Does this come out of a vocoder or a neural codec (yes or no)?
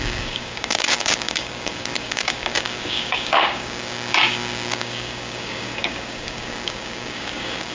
yes